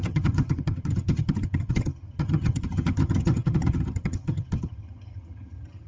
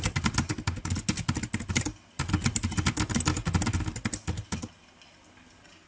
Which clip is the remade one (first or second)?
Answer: first